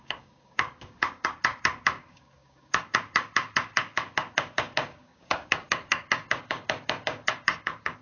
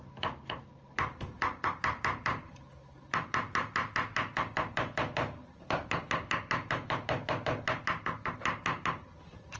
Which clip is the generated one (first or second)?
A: first